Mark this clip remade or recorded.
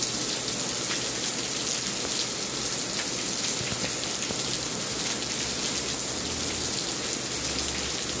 recorded